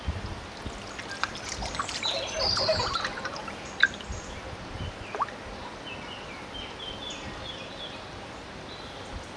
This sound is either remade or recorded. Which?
recorded